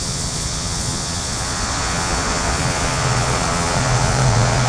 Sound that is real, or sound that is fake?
fake